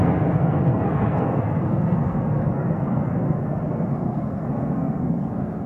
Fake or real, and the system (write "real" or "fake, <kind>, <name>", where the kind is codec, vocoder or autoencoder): fake, codec, SNAC